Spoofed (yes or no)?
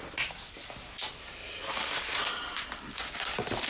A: no